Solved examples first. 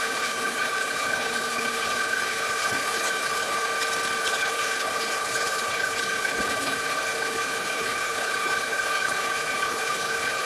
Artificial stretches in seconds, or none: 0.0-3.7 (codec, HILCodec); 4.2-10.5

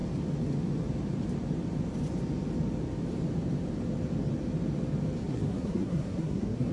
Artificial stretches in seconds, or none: 5.2-6.7 (codec, SNAC)

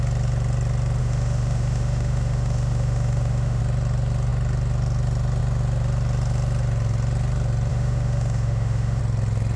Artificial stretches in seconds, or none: 1.0-3.6 (autoencoder, DAC-VAE); 7.7-9.0

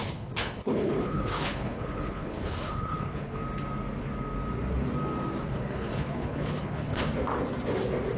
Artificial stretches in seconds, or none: 0.0-3.4 (codec, HILCodec); 5.4-7.1

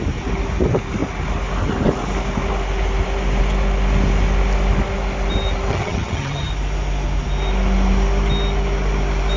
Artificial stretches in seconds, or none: 5.7-6.5 (vocoder, HiFi-GAN)

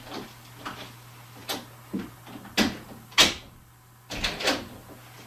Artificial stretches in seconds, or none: none

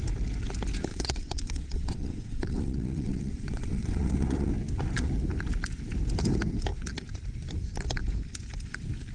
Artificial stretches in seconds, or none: 0.9-4.5 (vocoder, WaveNeXt)